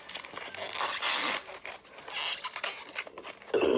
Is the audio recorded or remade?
recorded